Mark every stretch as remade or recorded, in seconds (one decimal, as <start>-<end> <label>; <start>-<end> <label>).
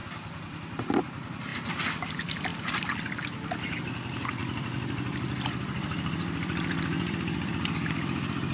0.0-1.0 remade; 1.0-1.5 recorded; 1.5-2.1 remade; 2.1-4.4 recorded; 4.4-7.5 remade; 7.5-8.5 recorded